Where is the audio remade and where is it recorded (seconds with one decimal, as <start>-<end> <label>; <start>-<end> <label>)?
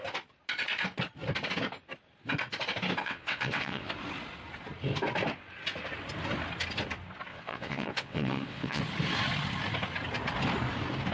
0.0-3.0 recorded; 3.0-3.9 remade; 3.9-7.3 recorded; 7.3-8.8 remade; 8.8-11.1 recorded